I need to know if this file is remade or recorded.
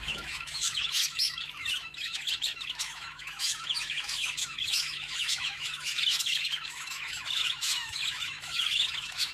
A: remade